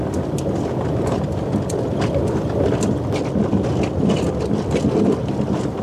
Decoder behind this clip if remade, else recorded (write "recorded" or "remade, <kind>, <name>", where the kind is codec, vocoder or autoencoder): recorded